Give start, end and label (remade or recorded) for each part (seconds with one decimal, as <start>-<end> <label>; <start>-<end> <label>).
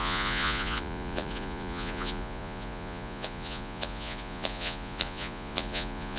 0.0-6.2 remade